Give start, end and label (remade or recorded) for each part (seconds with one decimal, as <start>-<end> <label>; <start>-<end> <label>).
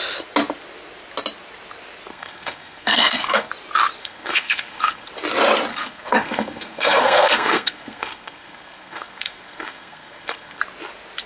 0.0-2.1 recorded; 2.1-3.5 remade; 3.5-4.0 recorded; 4.0-5.1 remade; 5.1-5.7 recorded; 5.7-10.6 remade; 10.6-11.3 recorded